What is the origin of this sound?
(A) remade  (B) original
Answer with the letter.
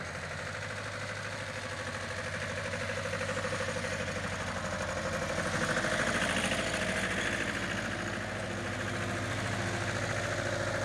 B